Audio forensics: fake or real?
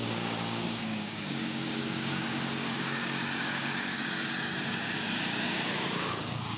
fake